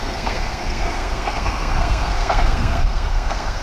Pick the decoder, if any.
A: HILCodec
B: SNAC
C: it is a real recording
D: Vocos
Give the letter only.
B